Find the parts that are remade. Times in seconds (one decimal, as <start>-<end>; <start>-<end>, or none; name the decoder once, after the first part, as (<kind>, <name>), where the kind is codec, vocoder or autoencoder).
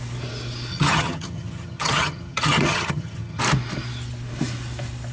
0.7-3.4 (vocoder, HiFi-GAN)